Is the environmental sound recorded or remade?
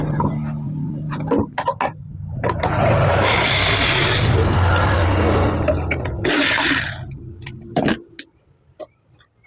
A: recorded